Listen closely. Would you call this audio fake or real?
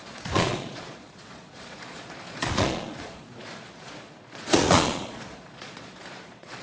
fake